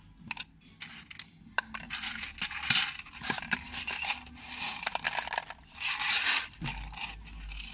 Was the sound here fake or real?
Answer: real